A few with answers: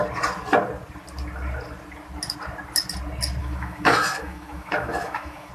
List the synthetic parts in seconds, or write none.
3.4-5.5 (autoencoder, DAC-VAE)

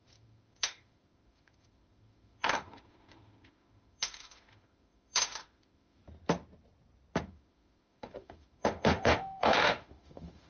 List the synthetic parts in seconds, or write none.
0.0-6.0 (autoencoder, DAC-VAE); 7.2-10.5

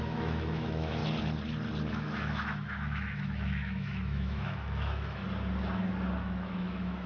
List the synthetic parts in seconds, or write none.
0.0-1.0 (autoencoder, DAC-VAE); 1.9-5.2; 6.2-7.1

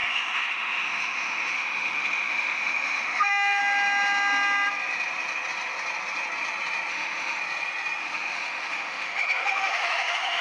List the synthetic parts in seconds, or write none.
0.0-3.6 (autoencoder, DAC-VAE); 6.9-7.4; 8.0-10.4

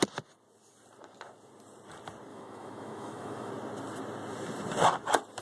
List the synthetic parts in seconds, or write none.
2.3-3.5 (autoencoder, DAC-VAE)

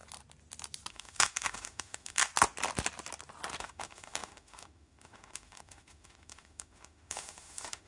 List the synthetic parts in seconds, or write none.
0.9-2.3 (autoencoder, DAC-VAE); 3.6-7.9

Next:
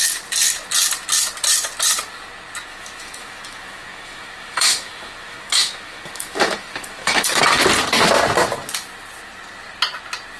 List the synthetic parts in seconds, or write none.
2.7-7.4 (autoencoder, DAC-VAE)